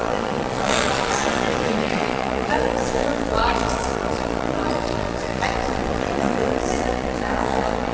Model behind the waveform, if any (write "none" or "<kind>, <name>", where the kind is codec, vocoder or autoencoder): vocoder, Vocos